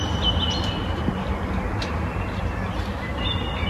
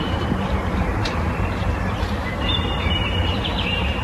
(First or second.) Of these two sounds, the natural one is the first